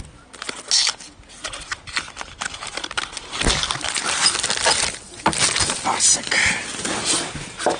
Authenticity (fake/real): real